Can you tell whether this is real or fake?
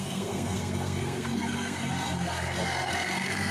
fake